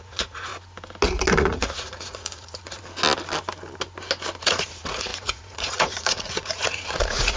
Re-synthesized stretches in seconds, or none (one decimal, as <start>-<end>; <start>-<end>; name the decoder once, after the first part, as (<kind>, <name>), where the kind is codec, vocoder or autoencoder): 0.0-0.5 (vocoder, Vocos); 1.3-2.8; 4.4-7.4